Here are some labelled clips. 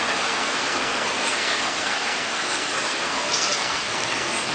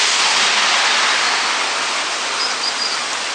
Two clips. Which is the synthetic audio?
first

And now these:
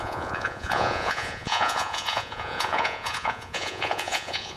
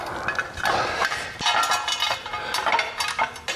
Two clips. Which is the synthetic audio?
first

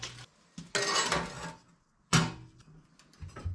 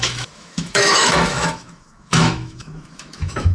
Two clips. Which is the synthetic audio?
second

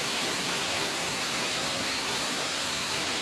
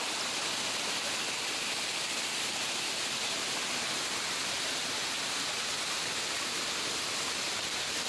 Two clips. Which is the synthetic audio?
first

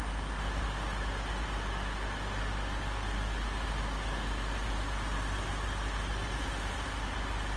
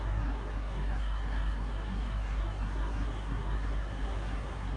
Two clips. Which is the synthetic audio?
second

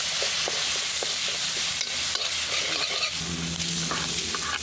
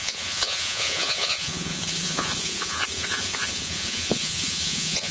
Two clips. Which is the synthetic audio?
second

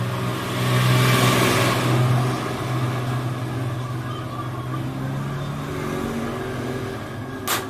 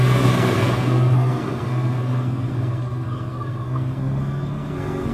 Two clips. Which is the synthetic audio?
second